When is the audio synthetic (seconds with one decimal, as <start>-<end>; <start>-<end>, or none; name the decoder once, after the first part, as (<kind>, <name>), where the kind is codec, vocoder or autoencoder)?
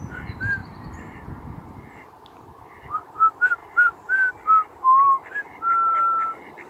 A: 0.6-1.7 (vocoder, BigVGAN v2); 3.6-4.3